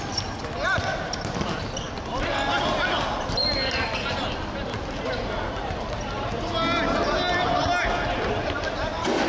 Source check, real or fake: real